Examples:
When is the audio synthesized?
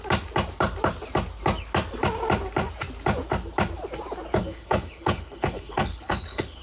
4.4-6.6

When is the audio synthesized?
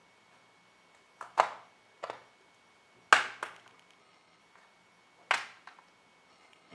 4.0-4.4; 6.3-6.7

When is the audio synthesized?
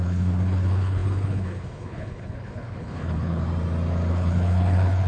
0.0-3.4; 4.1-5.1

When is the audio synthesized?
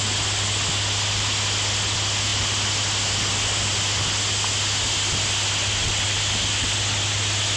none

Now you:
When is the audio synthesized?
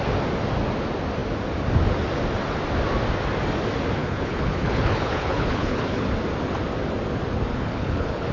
4.0-6.1; 7.5-8.3